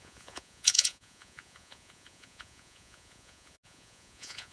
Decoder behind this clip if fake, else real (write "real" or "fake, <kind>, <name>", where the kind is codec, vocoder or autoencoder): fake, vocoder, Vocos